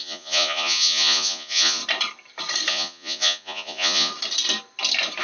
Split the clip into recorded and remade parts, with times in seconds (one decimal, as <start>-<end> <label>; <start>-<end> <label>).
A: 0.0-1.8 remade; 1.8-2.7 recorded; 2.7-4.1 remade; 4.1-5.2 recorded